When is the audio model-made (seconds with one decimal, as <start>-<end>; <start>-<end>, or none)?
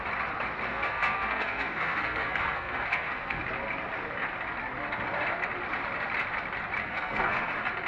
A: 0.7-3.4; 6.8-7.5